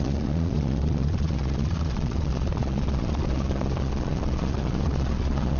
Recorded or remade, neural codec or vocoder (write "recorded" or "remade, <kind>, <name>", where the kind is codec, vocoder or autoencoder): remade, vocoder, Vocos